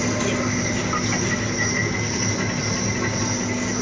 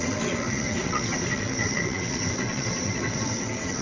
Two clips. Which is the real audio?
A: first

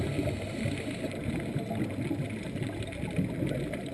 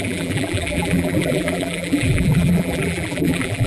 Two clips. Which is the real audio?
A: first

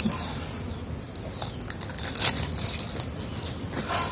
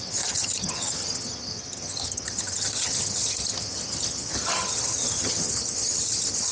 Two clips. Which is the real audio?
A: first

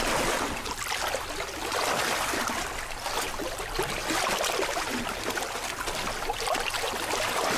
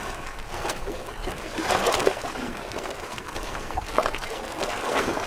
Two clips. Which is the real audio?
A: first